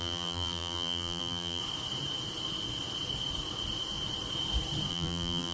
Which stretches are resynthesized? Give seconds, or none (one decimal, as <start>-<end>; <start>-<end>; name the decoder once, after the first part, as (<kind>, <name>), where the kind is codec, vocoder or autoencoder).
0.0-1.6 (vocoder, BigVGAN v2); 4.9-5.5